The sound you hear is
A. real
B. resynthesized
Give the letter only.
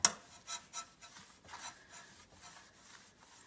A